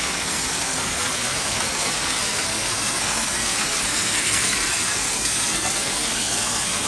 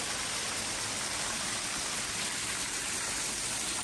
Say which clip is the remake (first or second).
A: first